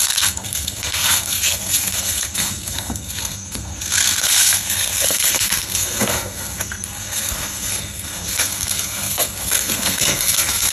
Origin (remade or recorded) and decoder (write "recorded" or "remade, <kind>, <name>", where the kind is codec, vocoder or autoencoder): remade, codec, SNAC